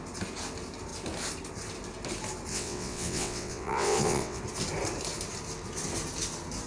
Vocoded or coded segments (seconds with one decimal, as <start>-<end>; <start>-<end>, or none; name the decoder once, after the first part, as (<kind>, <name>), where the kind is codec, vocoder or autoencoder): 2.5-4.4 (vocoder, WaveNeXt)